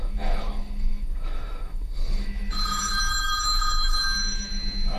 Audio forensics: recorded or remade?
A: remade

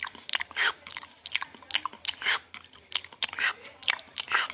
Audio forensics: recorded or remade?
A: recorded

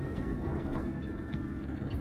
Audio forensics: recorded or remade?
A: remade